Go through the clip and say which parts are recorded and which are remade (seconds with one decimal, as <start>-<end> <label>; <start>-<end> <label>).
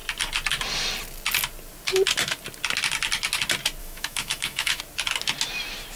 0.0-3.8 recorded; 3.8-4.8 remade; 4.8-6.0 recorded